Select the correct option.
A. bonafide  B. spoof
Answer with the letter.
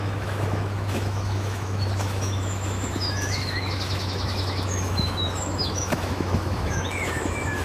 B